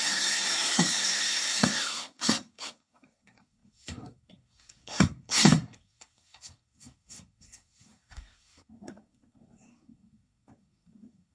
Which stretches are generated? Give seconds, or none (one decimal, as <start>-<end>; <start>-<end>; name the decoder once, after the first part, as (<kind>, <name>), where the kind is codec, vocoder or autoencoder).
0.0-11.3 (codec, SNAC)